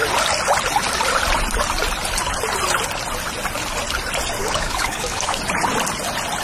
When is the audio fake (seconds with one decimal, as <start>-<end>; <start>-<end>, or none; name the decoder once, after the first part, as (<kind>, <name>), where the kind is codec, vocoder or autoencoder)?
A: 4.4-5.4 (codec, DAC)